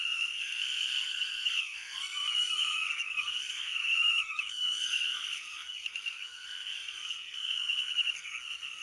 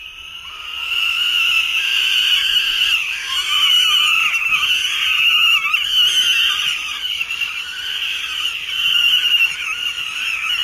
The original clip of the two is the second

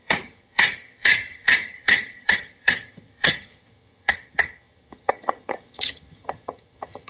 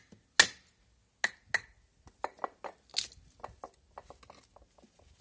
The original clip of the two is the second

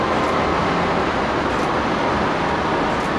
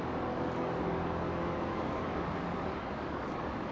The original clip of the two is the first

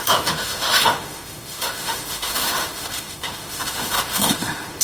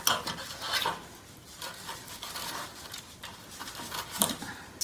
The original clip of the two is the second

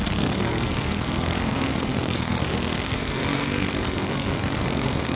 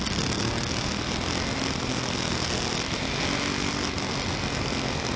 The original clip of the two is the second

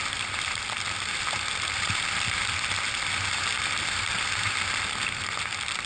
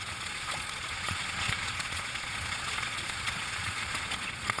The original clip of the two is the first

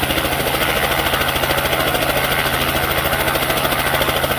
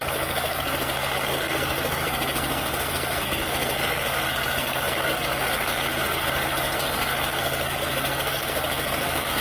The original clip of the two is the first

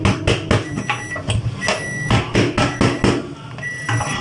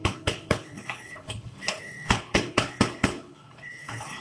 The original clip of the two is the first